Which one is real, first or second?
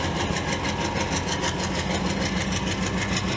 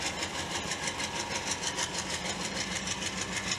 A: first